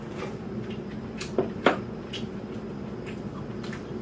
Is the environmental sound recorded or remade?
recorded